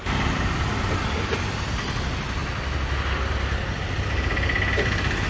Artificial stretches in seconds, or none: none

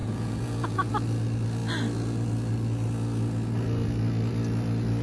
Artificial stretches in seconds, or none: 0.0-0.9 (vocoder, Vocos)

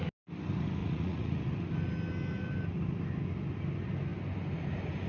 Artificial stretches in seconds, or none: 0.8-1.5 (vocoder, Vocos)

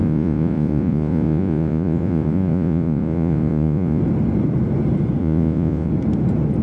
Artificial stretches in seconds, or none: 0.0-4.0 (vocoder, Vocos); 5.2-5.9

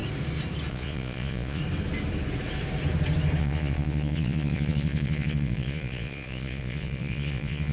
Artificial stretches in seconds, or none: 0.7-1.6 (vocoder, Vocos); 3.4-7.7

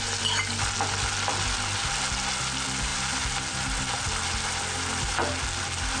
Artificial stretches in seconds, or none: none

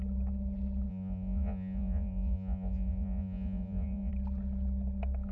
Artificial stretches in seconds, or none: 0.9-4.1 (vocoder, Vocos)

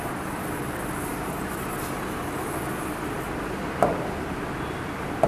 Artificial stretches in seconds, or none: none